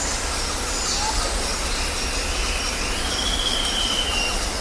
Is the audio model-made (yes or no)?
no